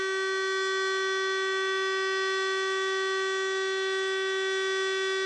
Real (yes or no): yes